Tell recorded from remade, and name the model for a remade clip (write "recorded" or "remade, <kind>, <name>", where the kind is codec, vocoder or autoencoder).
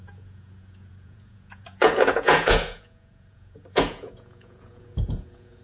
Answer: remade, vocoder, Vocos